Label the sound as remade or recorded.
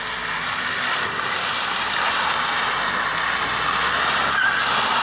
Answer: recorded